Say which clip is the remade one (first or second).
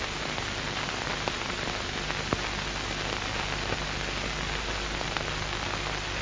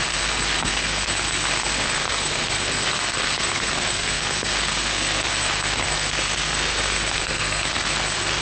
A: second